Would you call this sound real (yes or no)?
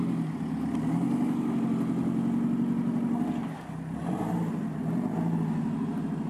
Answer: yes